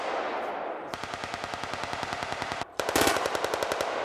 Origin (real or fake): real